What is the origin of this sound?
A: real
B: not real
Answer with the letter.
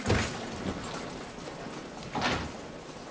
A